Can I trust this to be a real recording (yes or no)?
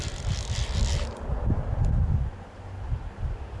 yes